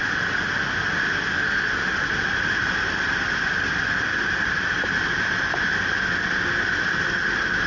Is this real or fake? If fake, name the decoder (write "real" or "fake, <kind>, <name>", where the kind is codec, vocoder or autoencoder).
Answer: real